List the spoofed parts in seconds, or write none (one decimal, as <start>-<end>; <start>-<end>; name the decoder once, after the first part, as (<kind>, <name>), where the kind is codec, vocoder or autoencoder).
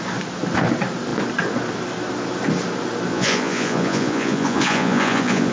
3.1-5.5 (vocoder, Vocos)